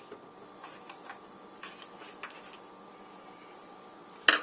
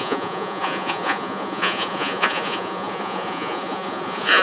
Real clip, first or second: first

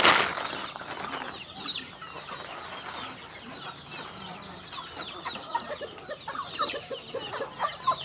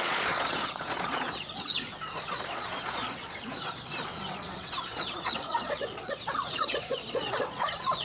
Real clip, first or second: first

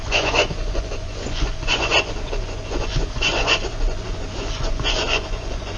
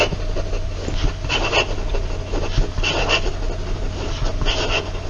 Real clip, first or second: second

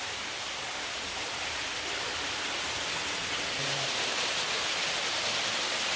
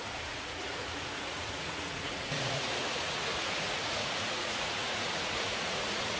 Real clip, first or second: first